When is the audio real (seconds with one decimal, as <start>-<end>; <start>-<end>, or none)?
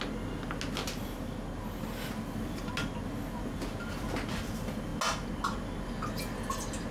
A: 0.0-6.9